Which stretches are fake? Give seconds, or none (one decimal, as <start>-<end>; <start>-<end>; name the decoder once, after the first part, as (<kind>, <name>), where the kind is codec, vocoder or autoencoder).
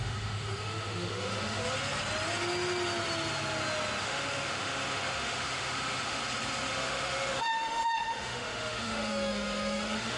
0.0-1.6 (autoencoder, DAC-VAE); 4.0-6.2; 6.7-10.2